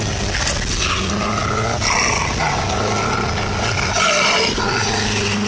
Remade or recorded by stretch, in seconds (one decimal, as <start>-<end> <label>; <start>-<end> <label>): 0.0-5.5 recorded